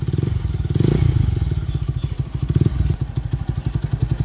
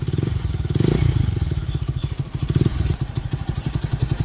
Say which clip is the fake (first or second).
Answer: second